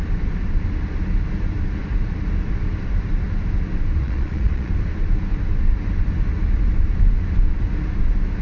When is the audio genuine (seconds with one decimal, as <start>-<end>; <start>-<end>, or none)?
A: 0.0-4.0; 4.7-8.4